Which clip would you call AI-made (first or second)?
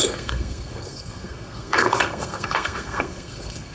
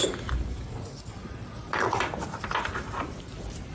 first